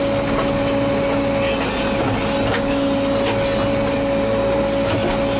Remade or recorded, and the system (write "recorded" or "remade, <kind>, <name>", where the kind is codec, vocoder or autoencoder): recorded